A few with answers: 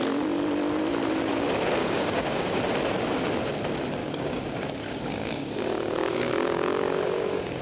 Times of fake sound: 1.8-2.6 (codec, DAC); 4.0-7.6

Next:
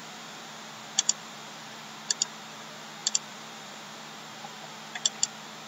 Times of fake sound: 0.0-1.5 (vocoder, BigVGAN v2); 3.0-4.0